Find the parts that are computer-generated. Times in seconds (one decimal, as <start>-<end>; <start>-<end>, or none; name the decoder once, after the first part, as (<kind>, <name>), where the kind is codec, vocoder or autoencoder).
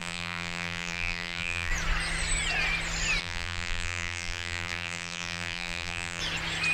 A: 0.0-1.7 (vocoder, BigVGAN v2); 3.2-6.2